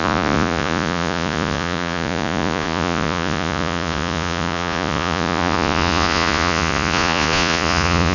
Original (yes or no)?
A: no